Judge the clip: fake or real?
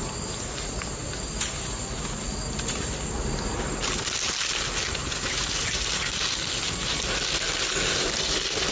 real